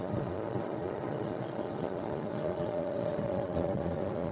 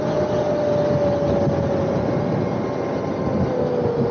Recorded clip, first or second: second